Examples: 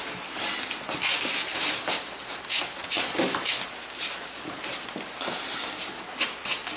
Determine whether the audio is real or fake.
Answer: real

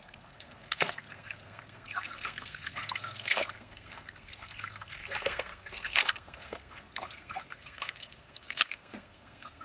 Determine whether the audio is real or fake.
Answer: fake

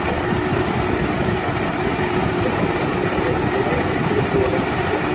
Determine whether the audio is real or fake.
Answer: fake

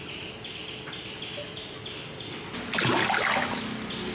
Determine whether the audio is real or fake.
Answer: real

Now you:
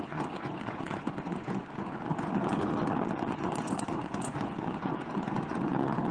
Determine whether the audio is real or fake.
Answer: fake